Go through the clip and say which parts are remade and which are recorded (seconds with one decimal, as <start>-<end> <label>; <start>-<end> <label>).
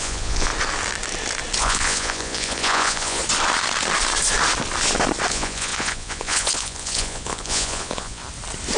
0.0-0.5 remade; 0.5-1.6 recorded; 1.6-3.2 remade; 3.2-5.3 recorded; 5.3-8.2 remade; 8.2-8.8 recorded